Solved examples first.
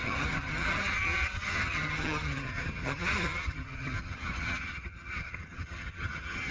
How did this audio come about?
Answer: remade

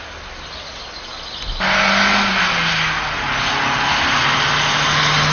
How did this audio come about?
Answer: recorded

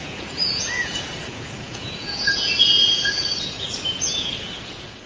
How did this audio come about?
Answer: remade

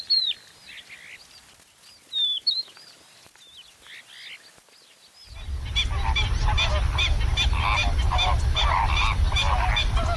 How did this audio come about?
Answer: recorded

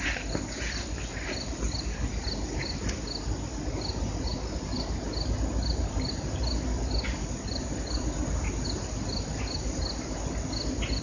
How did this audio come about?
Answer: recorded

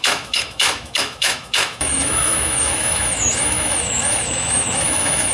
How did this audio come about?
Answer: remade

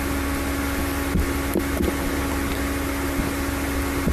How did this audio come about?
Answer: recorded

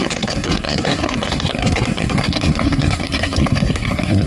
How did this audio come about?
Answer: remade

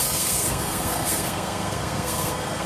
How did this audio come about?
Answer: remade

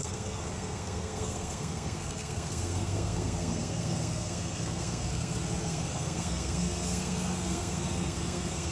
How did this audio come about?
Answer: remade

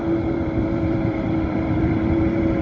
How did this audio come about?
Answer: remade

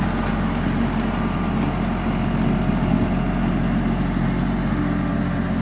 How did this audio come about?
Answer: recorded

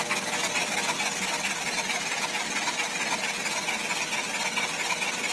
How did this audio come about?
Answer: recorded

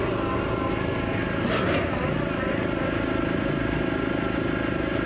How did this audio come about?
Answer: recorded